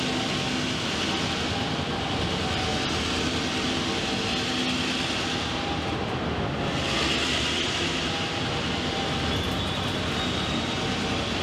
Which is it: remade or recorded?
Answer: recorded